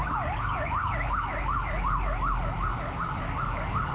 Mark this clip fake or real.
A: fake